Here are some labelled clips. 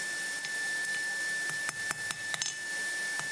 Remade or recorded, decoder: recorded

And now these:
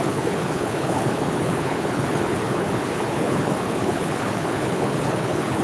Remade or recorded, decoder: remade, codec, HILCodec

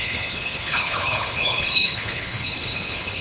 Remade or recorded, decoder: remade, codec, HILCodec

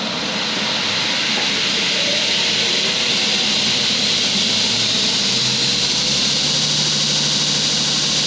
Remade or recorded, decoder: recorded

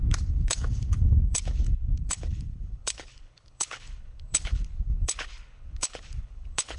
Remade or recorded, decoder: remade, codec, HILCodec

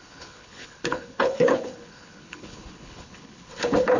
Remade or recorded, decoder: remade, codec, HILCodec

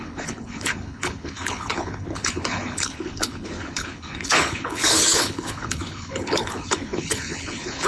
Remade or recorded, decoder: remade, codec, HILCodec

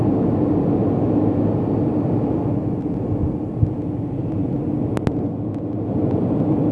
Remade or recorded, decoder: recorded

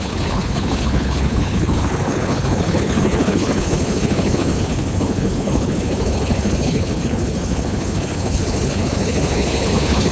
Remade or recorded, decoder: remade, codec, HILCodec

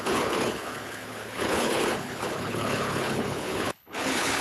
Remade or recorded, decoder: remade, codec, HILCodec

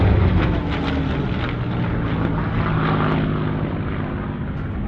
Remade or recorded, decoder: recorded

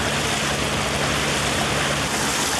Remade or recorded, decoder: recorded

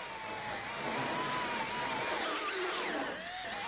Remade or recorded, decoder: recorded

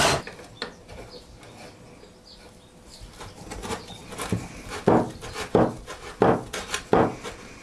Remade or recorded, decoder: recorded